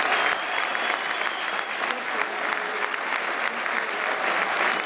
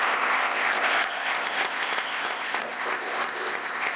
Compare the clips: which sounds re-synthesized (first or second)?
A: second